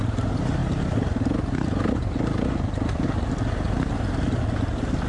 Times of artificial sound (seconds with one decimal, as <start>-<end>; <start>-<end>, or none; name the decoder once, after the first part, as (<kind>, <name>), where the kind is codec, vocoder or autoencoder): none